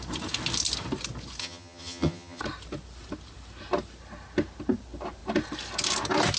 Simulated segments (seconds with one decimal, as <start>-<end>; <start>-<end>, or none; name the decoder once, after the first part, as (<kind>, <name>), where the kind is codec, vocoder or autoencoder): 1.4-2.4 (vocoder, HiFi-GAN)